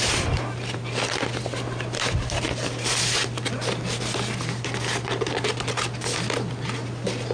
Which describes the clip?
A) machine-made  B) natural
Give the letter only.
B